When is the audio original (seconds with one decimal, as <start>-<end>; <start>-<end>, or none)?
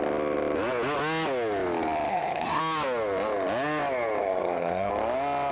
0.0-2.1; 2.6-4.2; 4.9-5.5